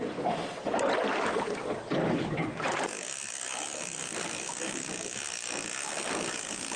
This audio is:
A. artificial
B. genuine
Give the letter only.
B